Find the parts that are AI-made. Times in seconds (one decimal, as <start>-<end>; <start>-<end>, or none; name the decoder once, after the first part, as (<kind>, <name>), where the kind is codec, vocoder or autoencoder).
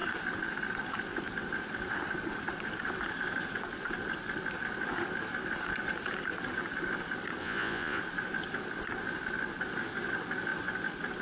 7.4-8.0 (vocoder, Vocos)